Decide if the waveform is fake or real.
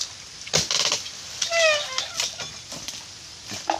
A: real